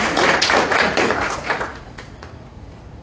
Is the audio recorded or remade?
remade